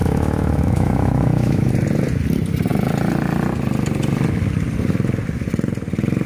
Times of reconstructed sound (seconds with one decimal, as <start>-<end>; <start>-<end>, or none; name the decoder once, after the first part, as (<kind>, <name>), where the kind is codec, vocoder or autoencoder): 0.0-1.7 (autoencoder, DAC-VAE)